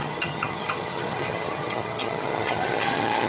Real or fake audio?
fake